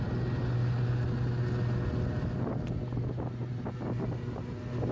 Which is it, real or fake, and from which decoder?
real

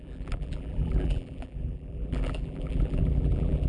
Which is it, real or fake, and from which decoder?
fake, vocoder, BigVGAN v2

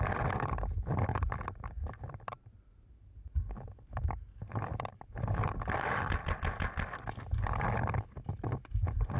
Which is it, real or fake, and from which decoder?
real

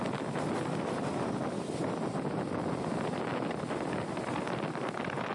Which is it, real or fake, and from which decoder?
real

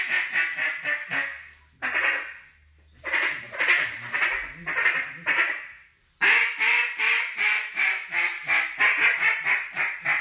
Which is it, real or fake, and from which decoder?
real